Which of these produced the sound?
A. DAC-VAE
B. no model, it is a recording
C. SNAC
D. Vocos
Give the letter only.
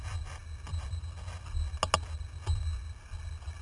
B